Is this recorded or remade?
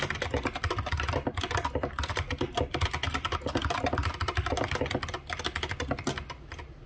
recorded